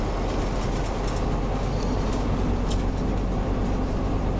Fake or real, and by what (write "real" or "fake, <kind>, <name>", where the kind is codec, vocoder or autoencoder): real